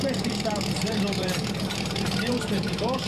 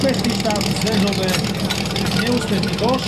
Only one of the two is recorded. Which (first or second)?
second